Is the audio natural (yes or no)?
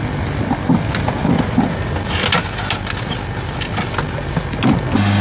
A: yes